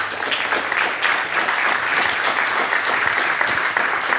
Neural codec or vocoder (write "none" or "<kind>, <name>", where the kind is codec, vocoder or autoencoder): none